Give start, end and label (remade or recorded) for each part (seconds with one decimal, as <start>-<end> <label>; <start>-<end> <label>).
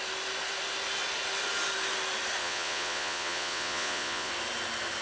0.0-2.4 recorded; 2.4-4.3 remade; 4.3-5.0 recorded